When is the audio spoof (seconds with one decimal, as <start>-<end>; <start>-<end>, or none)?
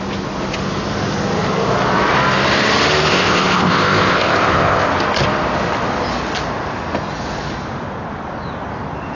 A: 3.1-4.9